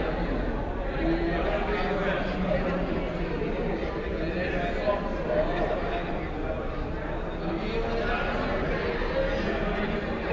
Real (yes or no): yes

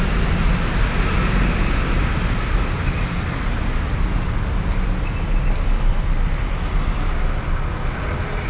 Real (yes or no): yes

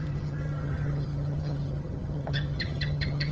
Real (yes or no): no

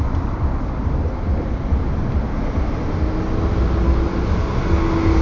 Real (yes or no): yes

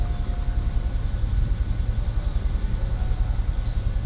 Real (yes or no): yes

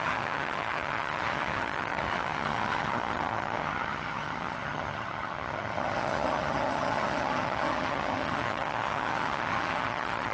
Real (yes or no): no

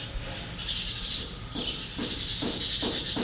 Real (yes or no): yes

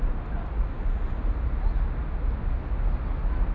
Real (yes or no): yes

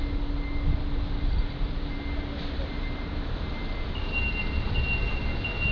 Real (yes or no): yes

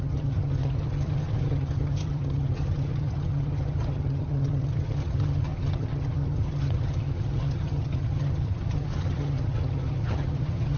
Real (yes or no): no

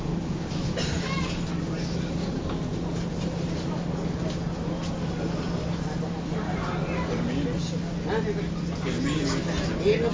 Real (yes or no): yes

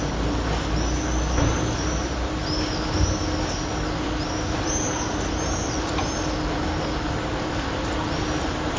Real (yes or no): yes